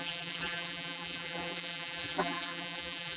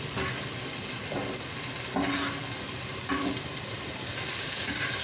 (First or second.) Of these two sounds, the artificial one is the first